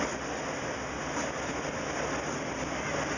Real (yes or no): yes